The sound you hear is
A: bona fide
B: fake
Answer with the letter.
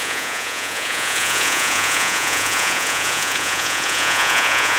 B